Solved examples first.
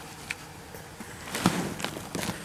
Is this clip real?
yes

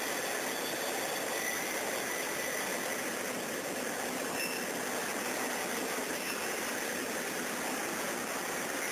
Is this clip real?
yes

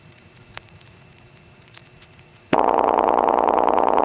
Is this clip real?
no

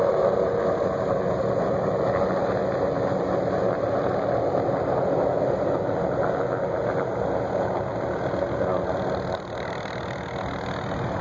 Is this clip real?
yes